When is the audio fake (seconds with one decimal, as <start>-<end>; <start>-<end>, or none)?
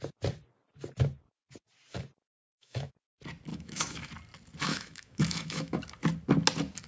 2.4-2.9; 3.5-4.1; 4.7-5.8